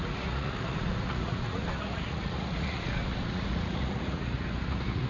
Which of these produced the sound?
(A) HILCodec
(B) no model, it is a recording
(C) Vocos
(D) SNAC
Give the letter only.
C